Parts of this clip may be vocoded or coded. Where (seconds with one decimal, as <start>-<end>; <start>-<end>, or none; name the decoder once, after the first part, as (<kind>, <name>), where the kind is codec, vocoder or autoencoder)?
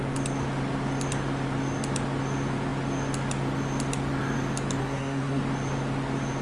4.8-5.4 (codec, SNAC)